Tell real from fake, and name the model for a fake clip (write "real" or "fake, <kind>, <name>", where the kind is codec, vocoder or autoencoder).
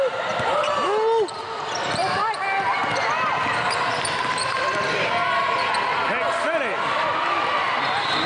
real